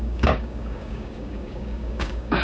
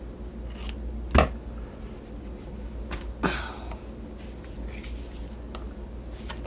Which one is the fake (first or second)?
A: first